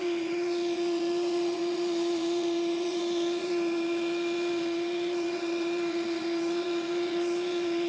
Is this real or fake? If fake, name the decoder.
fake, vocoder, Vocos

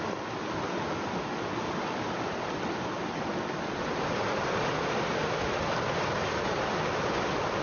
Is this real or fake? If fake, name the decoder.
real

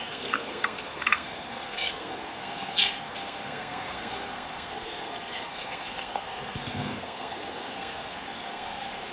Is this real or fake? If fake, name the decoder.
fake, codec, SNAC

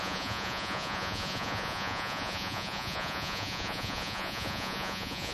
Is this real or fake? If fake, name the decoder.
fake, vocoder, Vocos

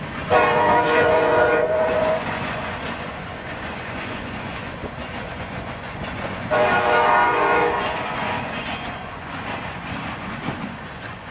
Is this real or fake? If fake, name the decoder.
fake, vocoder, Vocos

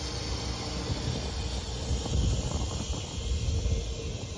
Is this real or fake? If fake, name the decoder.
real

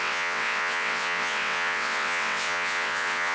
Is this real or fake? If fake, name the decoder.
fake, vocoder, WaveNeXt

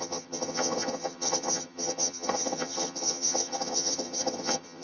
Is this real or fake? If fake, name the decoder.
fake, vocoder, HiFi-GAN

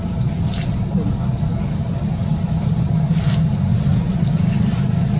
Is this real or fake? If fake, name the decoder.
real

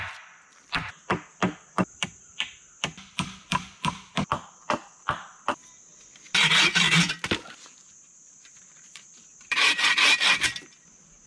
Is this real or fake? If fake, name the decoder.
fake, vocoder, BigVGAN v2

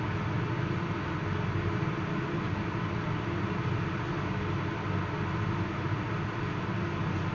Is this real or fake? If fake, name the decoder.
real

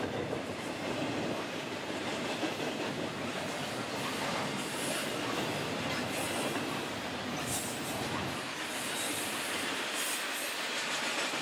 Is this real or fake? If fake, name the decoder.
real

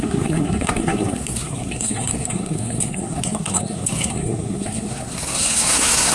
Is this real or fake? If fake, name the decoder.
fake, codec, SNAC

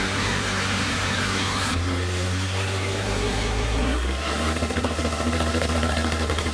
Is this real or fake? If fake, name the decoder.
fake, codec, SNAC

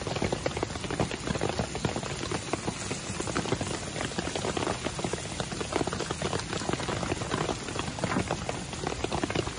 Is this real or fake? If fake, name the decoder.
real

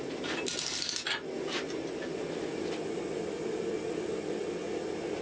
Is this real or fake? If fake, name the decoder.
real